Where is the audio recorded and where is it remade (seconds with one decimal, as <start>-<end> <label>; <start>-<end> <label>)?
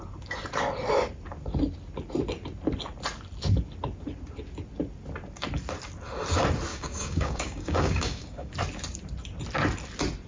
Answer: 0.0-6.7 recorded; 6.7-8.5 remade; 8.5-10.3 recorded